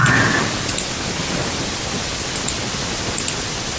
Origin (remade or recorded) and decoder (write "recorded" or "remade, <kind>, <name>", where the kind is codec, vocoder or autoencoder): recorded